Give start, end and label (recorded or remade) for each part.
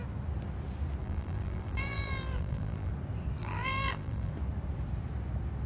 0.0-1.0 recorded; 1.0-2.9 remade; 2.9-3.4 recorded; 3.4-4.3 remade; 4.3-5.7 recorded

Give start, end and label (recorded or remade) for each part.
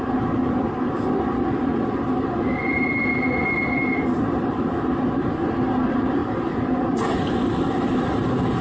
0.0-8.6 recorded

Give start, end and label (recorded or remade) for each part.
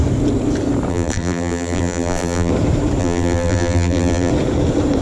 0.0-0.9 recorded; 0.9-2.5 remade; 2.5-3.0 recorded; 3.0-4.3 remade; 4.3-5.0 recorded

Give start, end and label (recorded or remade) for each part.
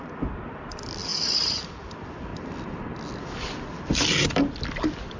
0.0-2.3 remade; 2.3-3.8 recorded; 3.8-5.2 remade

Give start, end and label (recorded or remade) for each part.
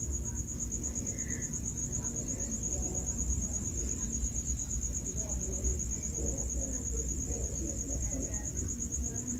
0.0-1.0 recorded; 1.0-1.8 remade; 1.8-2.7 recorded; 2.7-5.7 remade; 5.7-8.1 recorded; 8.1-9.4 remade